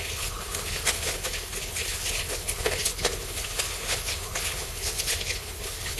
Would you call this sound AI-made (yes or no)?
yes